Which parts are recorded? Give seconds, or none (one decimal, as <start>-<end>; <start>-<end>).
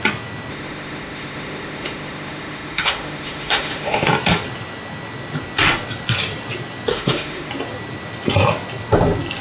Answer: 0.0-0.5; 4.1-6.9; 7.5-9.4